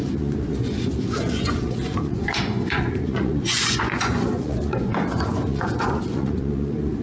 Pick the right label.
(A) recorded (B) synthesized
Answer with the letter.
B